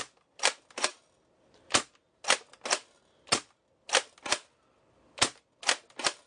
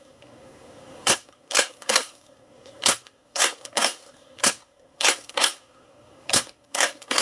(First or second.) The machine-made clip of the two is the second